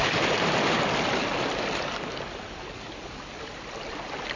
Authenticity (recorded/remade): recorded